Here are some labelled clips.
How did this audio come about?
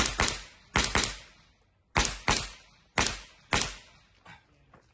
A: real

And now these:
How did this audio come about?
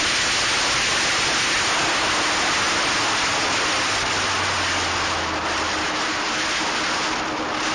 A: real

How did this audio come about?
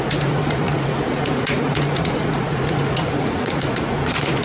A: fake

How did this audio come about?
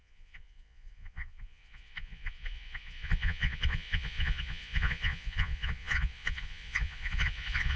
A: fake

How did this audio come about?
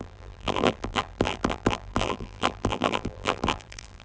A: fake